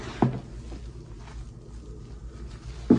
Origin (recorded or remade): recorded